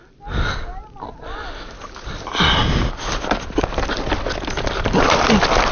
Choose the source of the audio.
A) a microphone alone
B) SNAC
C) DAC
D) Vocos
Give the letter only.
A